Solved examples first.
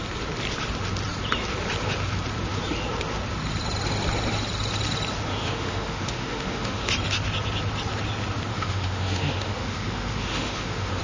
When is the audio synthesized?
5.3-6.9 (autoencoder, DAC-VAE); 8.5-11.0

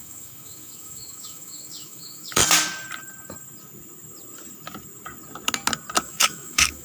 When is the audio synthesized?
0.0-2.4 (autoencoder, DAC-VAE); 6.0-6.8

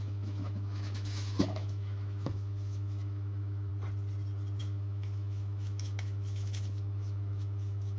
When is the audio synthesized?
0.0-3.7 (autoencoder, DAC-VAE); 4.6-8.0

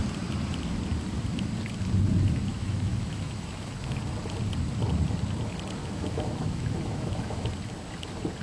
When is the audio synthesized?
2.5-4.0 (autoencoder, DAC-VAE); 5.8-7.5

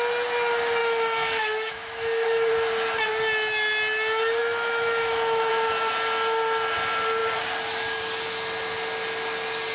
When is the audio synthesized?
0.8-2.5 (autoencoder, DAC-VAE); 4.4-5.5